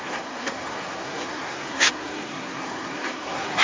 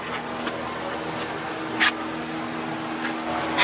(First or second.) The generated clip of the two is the first